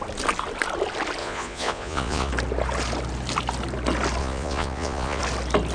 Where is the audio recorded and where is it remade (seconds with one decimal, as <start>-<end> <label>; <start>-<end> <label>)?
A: 0.0-1.2 recorded; 1.2-2.3 remade; 2.3-4.2 recorded; 4.2-5.2 remade; 5.2-5.7 recorded